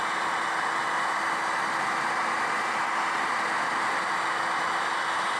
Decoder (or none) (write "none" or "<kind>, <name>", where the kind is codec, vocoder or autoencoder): none